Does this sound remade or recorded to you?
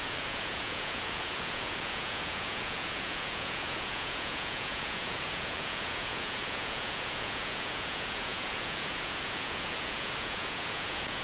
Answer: remade